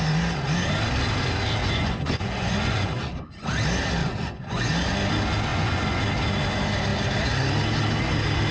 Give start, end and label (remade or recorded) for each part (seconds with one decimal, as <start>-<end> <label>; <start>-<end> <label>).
0.0-1.6 recorded; 1.6-3.3 remade; 3.3-4.0 recorded; 4.0-4.7 remade; 4.7-5.5 recorded; 5.5-6.0 remade; 6.0-8.5 recorded